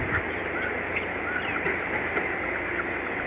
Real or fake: real